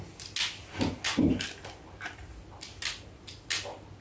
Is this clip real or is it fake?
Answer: real